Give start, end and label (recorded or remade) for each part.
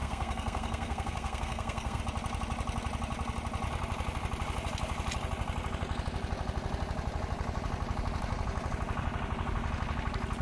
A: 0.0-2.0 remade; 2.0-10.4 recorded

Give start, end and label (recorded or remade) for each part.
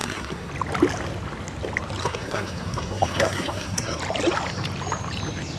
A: 0.0-0.5 remade; 0.5-2.0 recorded; 2.0-4.0 remade; 4.0-5.6 recorded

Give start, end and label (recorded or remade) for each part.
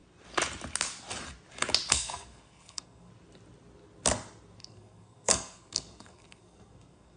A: 0.0-1.9 recorded; 1.9-3.1 remade; 3.1-4.6 recorded; 4.6-7.2 remade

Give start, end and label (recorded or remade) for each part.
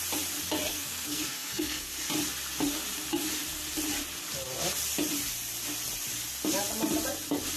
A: 0.0-0.7 recorded; 0.7-1.9 remade; 1.9-7.6 recorded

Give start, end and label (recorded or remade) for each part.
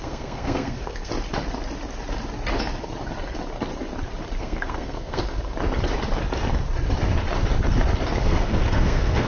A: 0.0-1.1 remade; 1.1-4.4 recorded; 4.4-5.2 remade; 5.2-8.2 recorded; 8.2-9.3 remade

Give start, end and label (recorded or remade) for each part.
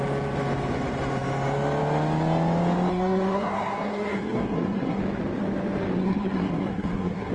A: 0.0-2.9 recorded; 2.9-5.0 remade; 5.0-6.0 recorded; 6.0-7.3 remade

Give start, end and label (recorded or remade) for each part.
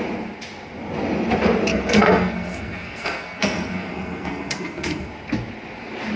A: 0.0-1.7 recorded; 1.7-5.1 remade; 5.1-6.2 recorded